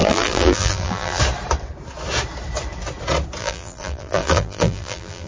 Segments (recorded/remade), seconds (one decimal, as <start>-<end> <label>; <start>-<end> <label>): 0.0-1.2 remade; 1.2-3.4 recorded; 3.4-5.3 remade